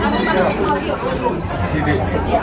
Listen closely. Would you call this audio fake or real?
fake